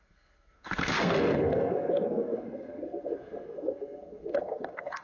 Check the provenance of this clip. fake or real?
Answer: fake